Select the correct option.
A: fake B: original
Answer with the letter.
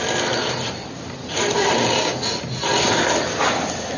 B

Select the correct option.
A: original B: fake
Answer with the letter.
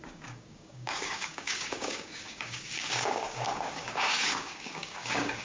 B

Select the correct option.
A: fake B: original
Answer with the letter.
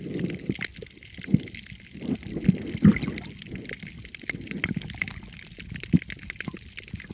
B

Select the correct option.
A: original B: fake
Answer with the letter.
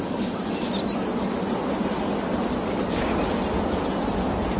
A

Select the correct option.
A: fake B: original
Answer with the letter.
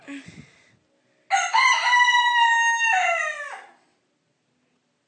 B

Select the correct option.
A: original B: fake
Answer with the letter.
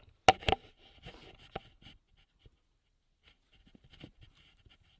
A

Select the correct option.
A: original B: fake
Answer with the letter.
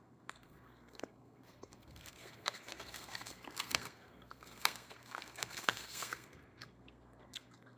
B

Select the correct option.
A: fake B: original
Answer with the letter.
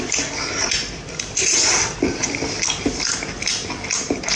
B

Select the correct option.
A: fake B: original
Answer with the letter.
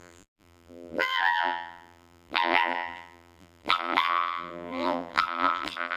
A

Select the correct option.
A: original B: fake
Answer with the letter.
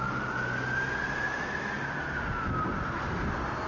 A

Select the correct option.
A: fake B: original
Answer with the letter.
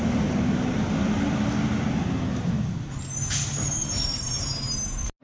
B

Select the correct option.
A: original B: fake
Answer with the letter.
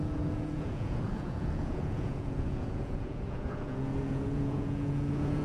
B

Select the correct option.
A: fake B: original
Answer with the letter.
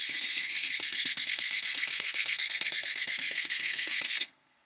A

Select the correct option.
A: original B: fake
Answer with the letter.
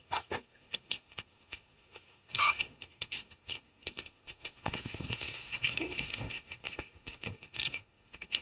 B